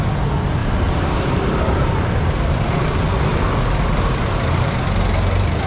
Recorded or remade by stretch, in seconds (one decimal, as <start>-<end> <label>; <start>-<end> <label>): 0.0-0.6 recorded; 0.6-1.4 remade; 1.4-5.7 recorded